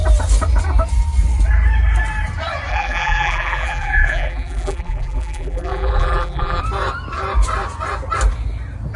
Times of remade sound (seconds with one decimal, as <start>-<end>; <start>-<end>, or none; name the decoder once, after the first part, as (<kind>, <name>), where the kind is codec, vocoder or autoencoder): 2.7-6.6 (vocoder, BigVGAN v2)